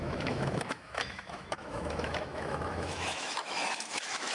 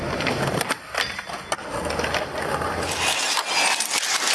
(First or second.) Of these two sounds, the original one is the second